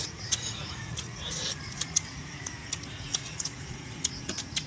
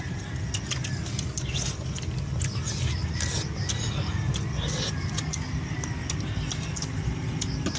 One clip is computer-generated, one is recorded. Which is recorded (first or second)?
second